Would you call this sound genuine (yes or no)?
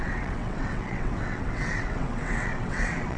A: no